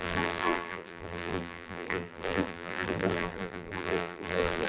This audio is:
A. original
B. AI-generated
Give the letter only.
B